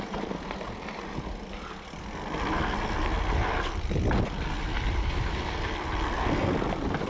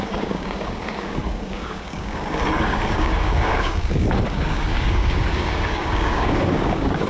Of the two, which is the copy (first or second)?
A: second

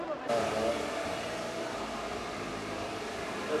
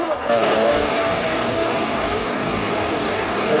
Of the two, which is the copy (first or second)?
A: second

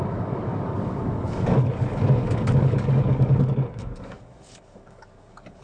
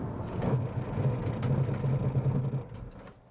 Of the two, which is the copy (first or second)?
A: first